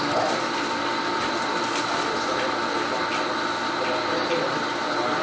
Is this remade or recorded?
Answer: recorded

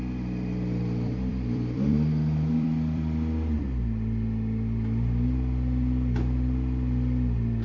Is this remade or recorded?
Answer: remade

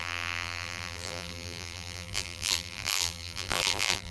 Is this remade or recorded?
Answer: remade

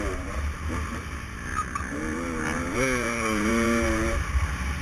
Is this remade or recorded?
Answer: remade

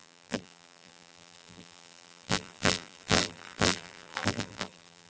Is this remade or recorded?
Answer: remade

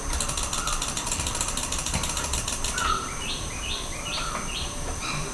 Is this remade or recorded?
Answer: remade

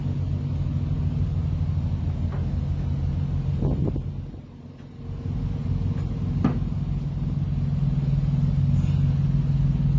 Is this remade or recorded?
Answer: recorded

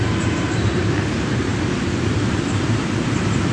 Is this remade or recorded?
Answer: remade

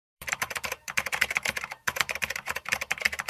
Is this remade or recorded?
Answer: remade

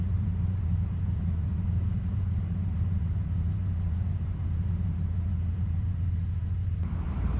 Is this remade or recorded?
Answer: remade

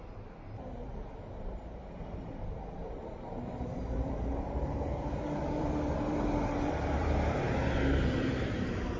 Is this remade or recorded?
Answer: remade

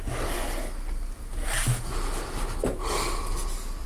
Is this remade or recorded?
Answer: recorded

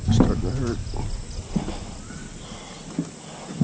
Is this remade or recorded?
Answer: recorded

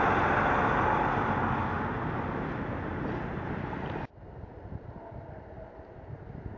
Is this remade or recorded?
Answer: recorded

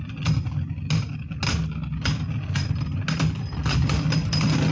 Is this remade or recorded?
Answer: recorded